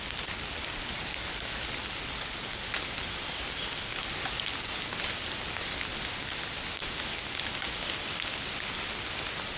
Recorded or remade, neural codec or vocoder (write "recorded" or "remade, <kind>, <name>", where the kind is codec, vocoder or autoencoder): recorded